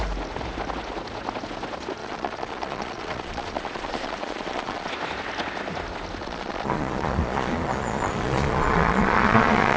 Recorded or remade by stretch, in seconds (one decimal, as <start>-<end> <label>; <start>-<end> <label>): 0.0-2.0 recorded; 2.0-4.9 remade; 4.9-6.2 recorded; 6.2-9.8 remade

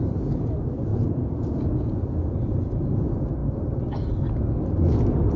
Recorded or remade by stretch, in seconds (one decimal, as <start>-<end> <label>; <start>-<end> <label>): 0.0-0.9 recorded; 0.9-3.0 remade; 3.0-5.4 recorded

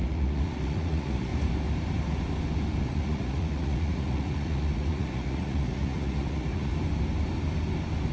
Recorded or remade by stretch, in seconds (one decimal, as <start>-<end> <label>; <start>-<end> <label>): 0.0-1.3 remade; 1.3-2.8 recorded; 2.8-6.7 remade; 6.7-8.1 recorded